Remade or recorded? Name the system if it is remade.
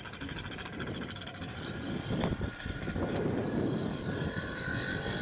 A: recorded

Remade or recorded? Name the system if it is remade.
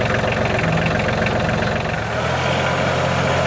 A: recorded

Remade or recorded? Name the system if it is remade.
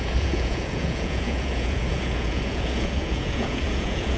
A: remade, vocoder, Vocos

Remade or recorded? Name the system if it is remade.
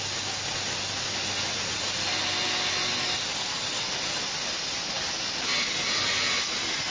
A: recorded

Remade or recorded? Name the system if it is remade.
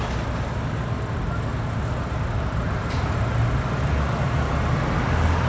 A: recorded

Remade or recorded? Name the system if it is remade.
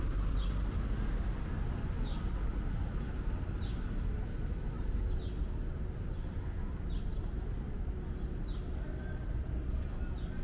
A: recorded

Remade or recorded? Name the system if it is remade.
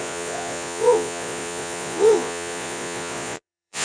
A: remade, vocoder, Vocos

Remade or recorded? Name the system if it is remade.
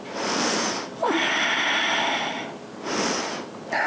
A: recorded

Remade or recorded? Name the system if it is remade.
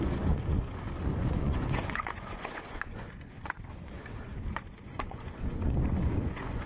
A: remade, vocoder, Vocos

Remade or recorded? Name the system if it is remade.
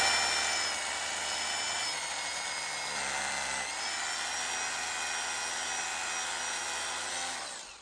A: recorded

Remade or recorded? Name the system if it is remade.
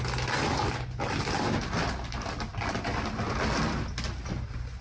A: recorded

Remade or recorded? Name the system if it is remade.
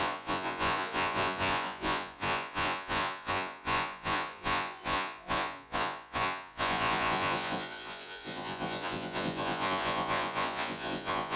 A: remade, vocoder, Vocos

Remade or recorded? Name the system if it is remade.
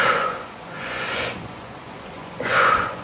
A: remade, vocoder, Vocos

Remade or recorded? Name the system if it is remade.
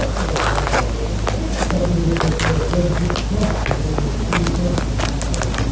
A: recorded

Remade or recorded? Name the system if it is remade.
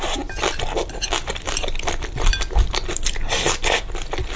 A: recorded